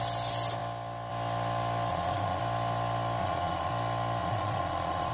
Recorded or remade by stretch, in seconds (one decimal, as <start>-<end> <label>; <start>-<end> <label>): 0.0-1.9 recorded; 1.9-2.4 remade; 2.4-3.2 recorded; 3.2-3.7 remade; 3.7-4.2 recorded; 4.2-5.1 remade